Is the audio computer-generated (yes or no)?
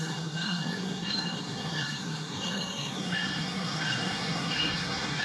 yes